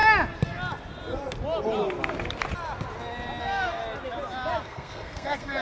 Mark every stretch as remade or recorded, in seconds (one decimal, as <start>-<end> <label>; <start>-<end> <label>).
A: 0.0-3.4 recorded; 3.4-3.8 remade; 3.8-4.6 recorded; 4.6-5.6 remade